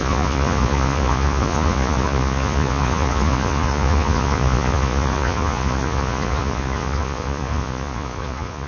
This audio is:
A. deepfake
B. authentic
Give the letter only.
A